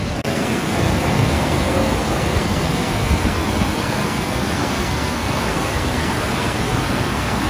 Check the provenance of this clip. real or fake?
fake